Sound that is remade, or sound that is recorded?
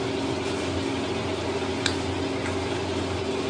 recorded